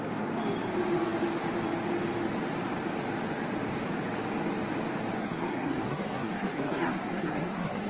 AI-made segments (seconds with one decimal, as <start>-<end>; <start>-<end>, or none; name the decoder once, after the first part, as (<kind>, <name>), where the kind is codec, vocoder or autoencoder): 5.2-7.9 (codec, SNAC)